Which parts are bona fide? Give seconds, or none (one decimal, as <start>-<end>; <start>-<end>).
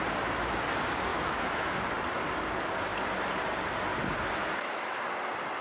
0.0-1.1; 1.8-4.4; 5.0-5.6